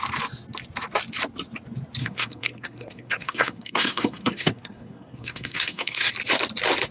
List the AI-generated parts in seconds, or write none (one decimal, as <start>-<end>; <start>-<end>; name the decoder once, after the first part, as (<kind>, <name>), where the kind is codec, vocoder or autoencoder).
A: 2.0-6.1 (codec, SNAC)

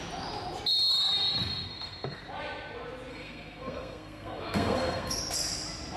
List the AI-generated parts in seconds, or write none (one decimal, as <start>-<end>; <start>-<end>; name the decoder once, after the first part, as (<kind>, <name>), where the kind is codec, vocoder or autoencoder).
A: 1.4-2.2 (codec, SNAC); 3.1-5.2

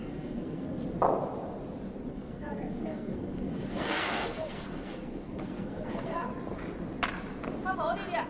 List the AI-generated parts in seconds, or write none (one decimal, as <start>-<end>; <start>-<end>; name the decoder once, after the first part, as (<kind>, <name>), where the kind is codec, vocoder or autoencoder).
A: 0.0-0.8 (codec, SNAC); 2.1-6.3

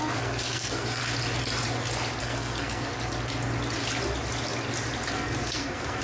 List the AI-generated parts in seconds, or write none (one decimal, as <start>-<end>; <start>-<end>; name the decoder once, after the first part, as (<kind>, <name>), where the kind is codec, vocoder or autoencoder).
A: 0.0-1.0 (codec, SNAC); 2.2-2.9; 5.1-6.0

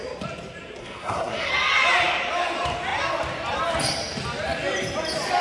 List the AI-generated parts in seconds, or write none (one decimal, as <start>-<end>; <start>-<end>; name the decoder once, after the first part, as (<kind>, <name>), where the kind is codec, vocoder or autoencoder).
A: 0.8-1.5 (codec, SNAC)